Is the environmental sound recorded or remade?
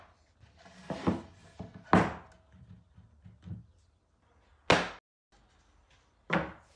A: recorded